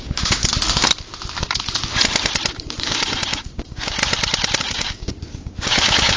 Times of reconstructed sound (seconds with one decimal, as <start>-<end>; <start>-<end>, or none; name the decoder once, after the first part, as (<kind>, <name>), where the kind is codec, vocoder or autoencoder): 0.0-0.4 (codec, DAC); 2.5-4.0; 4.6-6.2